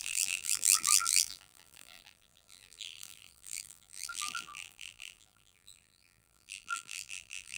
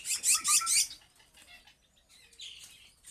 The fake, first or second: first